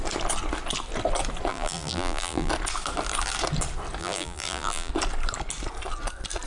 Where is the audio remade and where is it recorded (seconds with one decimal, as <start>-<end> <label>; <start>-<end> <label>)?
0.0-1.5 recorded; 1.5-2.5 remade; 2.5-4.0 recorded; 4.0-4.9 remade; 4.9-6.5 recorded